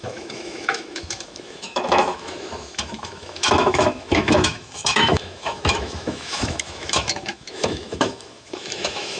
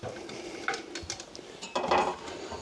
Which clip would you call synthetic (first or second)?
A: first